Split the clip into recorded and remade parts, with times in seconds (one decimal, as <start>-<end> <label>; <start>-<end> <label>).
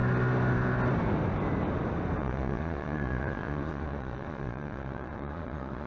0.0-2.2 recorded; 2.2-5.9 remade